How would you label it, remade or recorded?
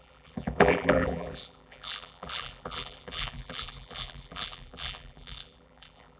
remade